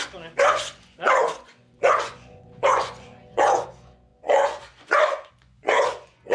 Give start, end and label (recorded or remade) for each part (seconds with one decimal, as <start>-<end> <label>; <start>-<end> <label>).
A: 0.0-6.3 remade

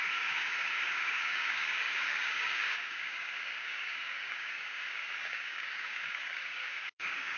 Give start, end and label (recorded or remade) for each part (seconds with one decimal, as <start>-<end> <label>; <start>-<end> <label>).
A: 0.0-7.4 remade

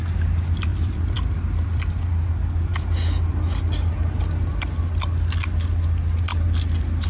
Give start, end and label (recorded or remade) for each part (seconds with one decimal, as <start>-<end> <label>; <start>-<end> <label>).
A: 0.0-0.7 recorded; 0.7-2.0 remade; 2.0-7.1 recorded

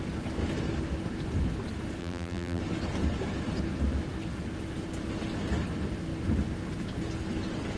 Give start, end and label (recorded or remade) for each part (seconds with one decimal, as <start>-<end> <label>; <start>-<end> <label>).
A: 0.0-2.0 recorded; 2.0-2.6 remade; 2.6-7.8 recorded

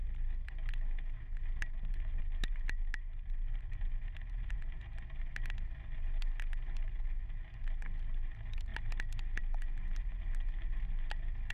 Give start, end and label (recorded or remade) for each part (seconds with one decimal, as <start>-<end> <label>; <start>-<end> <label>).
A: 0.0-11.5 recorded